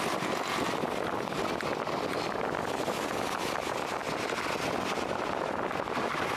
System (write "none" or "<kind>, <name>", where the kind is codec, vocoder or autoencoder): none